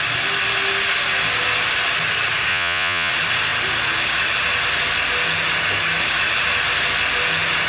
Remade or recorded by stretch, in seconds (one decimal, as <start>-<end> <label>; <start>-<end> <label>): 0.0-2.5 recorded; 2.5-3.1 remade; 3.1-7.7 recorded